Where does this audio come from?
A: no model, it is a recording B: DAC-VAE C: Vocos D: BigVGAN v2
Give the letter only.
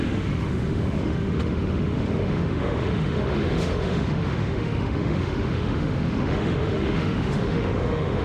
B